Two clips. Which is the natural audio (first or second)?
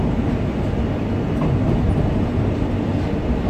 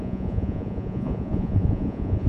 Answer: first